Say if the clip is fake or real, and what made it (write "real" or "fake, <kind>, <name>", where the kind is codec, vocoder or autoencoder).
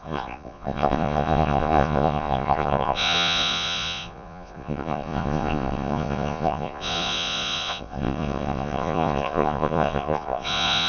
fake, vocoder, Vocos